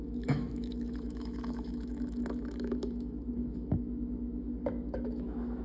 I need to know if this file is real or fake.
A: fake